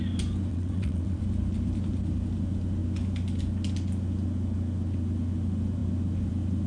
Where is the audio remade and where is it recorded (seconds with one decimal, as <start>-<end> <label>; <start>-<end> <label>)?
0.0-0.5 recorded; 0.5-1.2 remade; 1.2-6.7 recorded